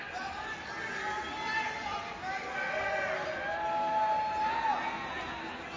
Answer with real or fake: real